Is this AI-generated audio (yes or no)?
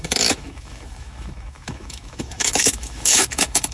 yes